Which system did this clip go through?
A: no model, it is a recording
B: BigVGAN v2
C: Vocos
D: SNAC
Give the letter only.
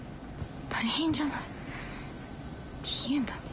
A